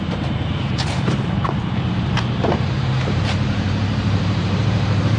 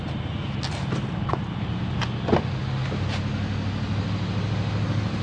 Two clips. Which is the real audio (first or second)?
second